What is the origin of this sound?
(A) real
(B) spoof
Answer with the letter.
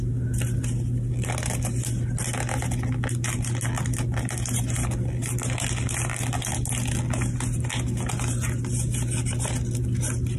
A